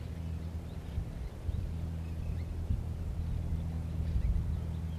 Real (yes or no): yes